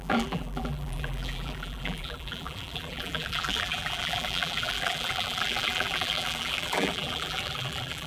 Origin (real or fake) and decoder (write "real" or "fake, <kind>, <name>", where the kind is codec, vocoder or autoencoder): fake, vocoder, BigVGAN v2